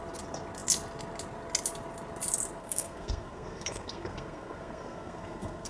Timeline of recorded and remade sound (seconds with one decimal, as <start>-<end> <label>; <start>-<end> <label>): 0.0-2.6 recorded; 2.6-5.7 remade